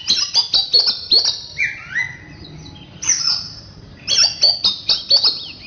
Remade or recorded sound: recorded